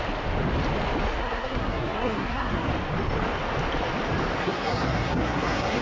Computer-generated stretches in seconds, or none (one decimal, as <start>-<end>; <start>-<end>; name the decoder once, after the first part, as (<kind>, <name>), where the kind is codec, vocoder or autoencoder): 1.2-2.7 (codec, SNAC); 4.4-5.8